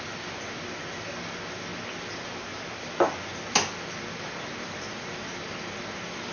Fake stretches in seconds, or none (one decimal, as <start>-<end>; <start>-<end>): none